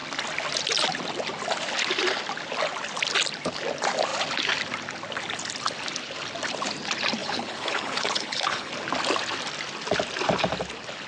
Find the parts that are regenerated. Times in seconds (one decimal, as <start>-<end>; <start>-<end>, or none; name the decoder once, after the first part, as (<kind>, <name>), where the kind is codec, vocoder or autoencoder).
7.2-8.7 (codec, HILCodec)